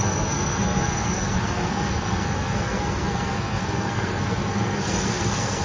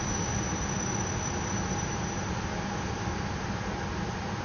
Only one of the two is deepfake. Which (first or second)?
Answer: first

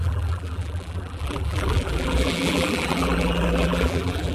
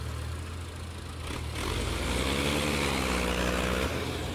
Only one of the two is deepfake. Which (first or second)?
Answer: first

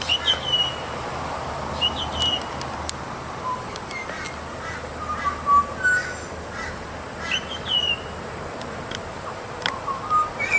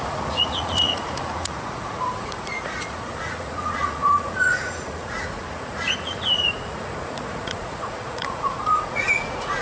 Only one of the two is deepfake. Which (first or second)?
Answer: second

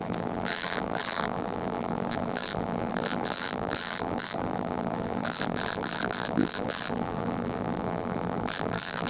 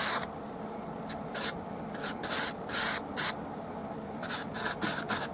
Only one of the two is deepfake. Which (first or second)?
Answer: first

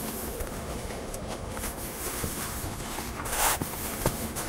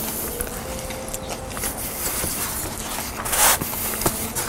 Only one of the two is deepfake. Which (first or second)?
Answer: first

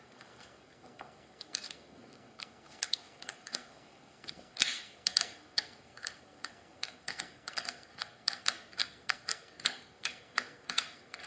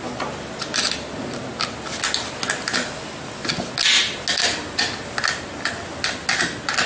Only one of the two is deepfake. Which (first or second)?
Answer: first